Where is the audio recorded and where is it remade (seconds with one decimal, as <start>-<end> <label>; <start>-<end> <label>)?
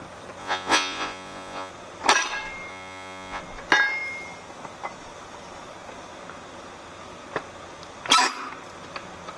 0.0-0.4 recorded; 0.4-1.7 remade; 1.7-2.7 recorded; 2.7-3.4 remade; 3.4-9.4 recorded